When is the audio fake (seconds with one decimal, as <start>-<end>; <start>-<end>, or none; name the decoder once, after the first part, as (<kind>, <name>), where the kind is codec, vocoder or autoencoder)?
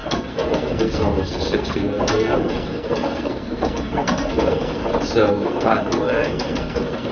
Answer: 0.0-4.8 (codec, SNAC); 5.3-7.1